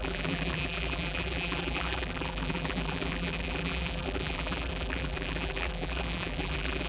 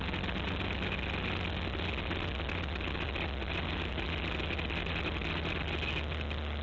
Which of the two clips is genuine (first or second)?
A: second